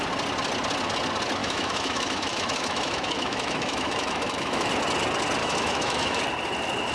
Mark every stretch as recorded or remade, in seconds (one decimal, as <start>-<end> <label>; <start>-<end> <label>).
0.0-1.4 recorded; 1.4-4.7 remade; 4.7-5.4 recorded; 5.4-6.2 remade; 6.2-6.9 recorded